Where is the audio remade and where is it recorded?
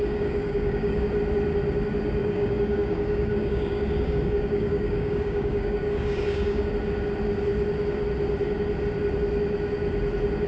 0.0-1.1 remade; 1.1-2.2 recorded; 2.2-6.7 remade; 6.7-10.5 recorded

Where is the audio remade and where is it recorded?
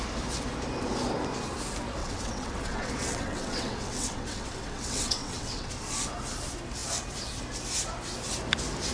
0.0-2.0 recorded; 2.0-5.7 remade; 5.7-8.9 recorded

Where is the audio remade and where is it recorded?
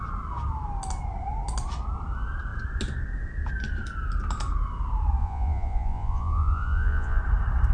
0.0-5.2 recorded; 5.2-7.2 remade; 7.2-7.7 recorded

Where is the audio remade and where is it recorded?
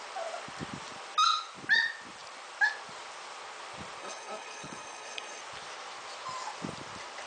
0.0-4.0 recorded; 4.0-5.4 remade; 5.4-7.3 recorded